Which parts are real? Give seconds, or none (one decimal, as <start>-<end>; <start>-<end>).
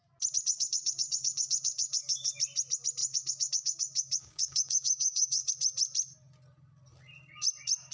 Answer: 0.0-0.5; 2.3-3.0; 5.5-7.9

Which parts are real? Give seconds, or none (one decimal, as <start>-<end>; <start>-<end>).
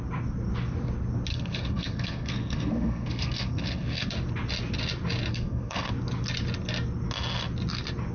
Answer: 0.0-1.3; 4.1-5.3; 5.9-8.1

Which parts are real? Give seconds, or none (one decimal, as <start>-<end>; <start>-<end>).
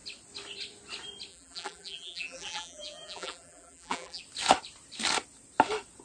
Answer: 0.0-1.3; 4.2-6.0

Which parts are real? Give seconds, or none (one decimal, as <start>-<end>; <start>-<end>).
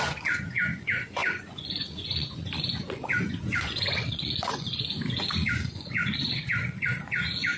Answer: none